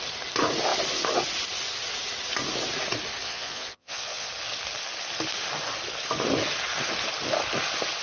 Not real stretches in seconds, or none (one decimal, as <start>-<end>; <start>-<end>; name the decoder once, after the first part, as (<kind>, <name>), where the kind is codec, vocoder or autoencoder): 3.2-4.3 (vocoder, Vocos)